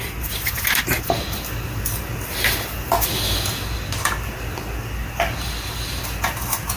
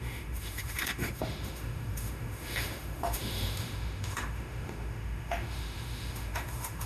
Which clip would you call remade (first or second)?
second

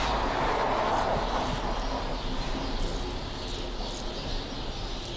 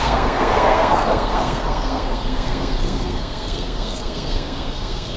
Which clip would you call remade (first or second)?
second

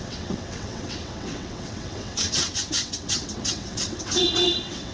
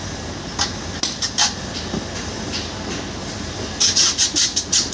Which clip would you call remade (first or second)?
first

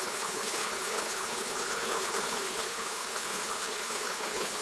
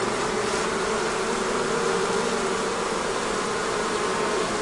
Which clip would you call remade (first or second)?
first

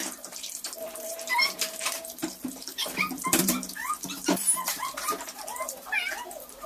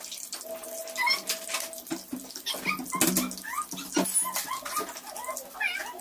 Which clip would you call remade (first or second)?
first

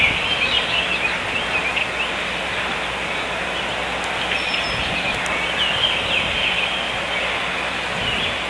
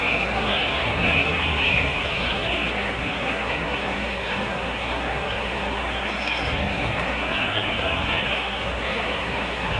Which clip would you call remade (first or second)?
second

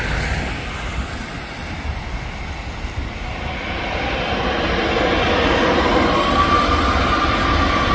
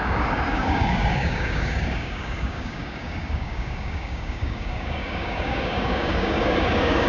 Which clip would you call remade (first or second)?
second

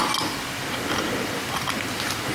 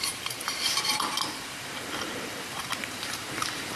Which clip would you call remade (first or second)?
second